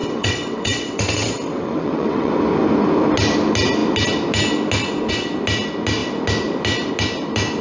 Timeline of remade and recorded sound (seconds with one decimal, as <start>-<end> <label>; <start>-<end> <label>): 0.0-2.3 remade; 2.3-7.6 recorded